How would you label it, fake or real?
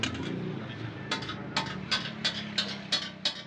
real